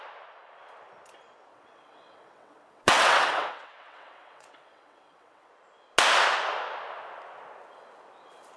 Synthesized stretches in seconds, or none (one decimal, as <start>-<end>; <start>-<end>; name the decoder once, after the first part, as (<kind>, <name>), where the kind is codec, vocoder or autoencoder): 1.5-5.5 (vocoder, WaveNeXt)